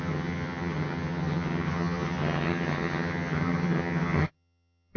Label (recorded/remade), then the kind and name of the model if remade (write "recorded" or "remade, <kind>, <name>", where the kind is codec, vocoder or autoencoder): remade, vocoder, HiFi-GAN